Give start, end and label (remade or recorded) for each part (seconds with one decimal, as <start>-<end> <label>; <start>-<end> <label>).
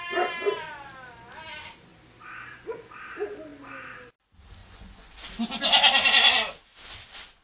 0.0-4.6 recorded; 4.6-5.3 remade; 5.3-7.4 recorded